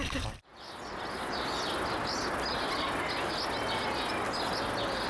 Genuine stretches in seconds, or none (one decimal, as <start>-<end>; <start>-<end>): 0.0-5.1